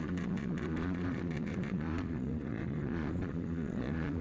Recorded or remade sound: remade